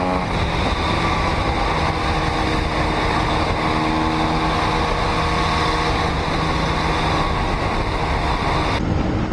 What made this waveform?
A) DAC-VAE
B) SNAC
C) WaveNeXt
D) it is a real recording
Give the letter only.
D